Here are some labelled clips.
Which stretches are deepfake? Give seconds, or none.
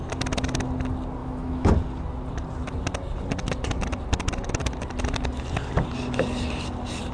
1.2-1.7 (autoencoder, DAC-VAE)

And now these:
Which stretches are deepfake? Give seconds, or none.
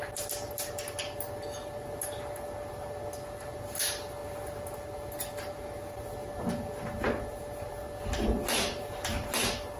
none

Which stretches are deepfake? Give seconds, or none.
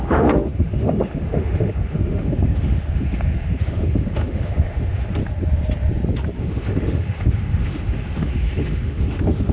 0.0-5.2 (autoencoder, DAC-VAE); 6.4-9.5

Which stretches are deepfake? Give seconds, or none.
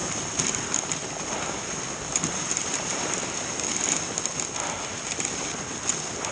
none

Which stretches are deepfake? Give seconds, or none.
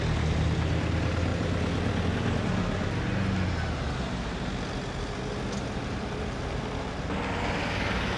none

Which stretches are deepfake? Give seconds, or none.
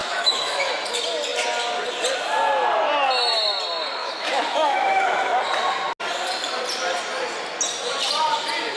0.0-0.7 (autoencoder, DAC-VAE); 4.0-5.4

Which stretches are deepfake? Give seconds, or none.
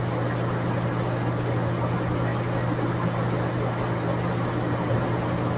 none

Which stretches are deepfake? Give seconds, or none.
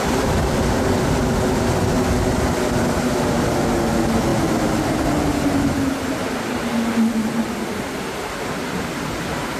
none